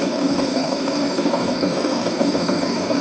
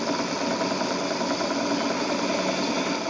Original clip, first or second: second